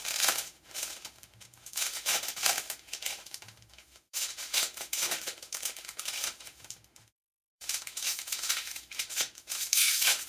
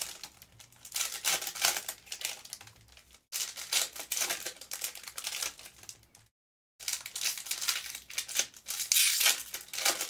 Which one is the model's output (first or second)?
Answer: first